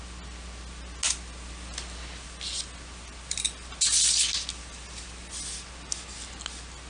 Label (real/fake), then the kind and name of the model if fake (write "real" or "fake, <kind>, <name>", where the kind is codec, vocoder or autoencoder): real